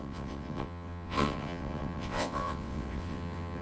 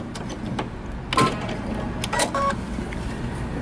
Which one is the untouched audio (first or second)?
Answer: second